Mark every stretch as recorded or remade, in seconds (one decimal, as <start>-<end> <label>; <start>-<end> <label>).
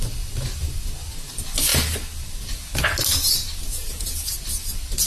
0.0-5.1 recorded